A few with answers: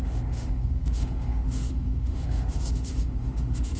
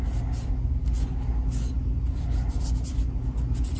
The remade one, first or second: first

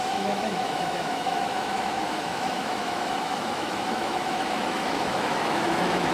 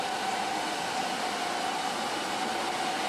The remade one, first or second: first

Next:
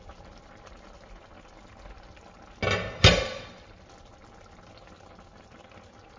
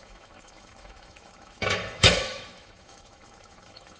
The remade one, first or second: second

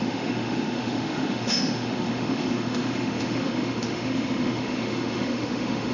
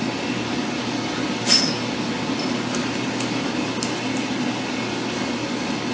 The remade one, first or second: first